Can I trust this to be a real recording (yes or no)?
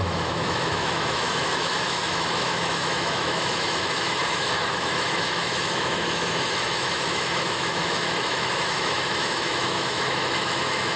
no